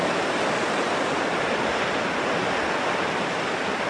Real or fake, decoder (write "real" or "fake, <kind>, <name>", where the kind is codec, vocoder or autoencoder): real